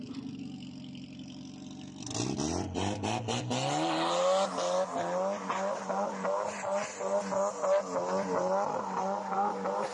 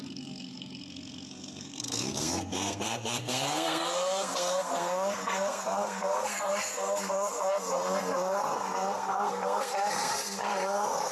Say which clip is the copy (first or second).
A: second